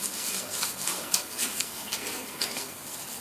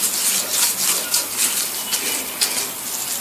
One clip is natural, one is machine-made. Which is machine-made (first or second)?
first